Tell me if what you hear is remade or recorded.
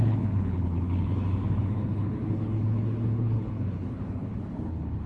remade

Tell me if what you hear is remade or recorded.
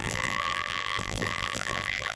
remade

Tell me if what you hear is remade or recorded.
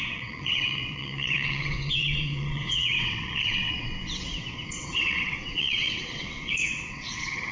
remade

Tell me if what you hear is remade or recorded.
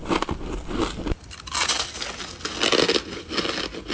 recorded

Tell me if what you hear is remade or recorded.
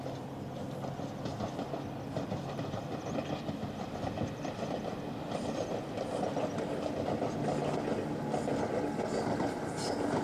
recorded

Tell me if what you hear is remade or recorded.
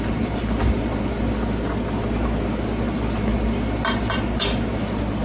recorded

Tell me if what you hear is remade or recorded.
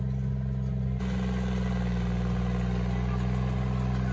recorded